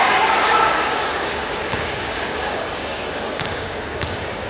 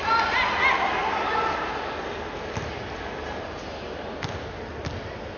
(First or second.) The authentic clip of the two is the second